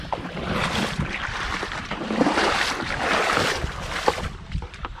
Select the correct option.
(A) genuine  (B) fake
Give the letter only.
B